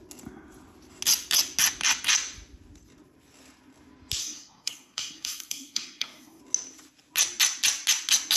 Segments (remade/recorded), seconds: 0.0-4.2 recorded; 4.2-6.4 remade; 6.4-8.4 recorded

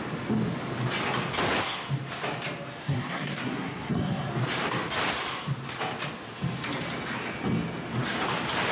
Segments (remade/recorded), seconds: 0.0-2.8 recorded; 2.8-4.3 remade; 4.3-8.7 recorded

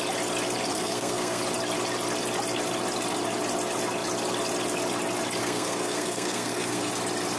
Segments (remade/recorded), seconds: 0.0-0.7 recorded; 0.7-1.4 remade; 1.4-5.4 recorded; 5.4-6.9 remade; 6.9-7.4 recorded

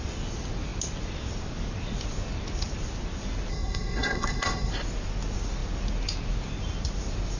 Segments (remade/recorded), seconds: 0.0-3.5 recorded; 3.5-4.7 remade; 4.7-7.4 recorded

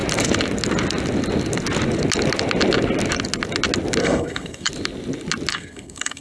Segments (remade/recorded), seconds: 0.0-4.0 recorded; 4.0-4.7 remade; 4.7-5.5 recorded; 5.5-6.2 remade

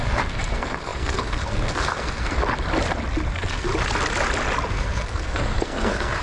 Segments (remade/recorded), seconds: 0.0-2.4 remade; 2.4-3.3 recorded; 3.3-3.7 remade; 3.7-4.7 recorded; 4.7-6.2 remade